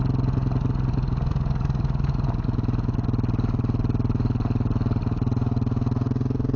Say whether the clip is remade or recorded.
recorded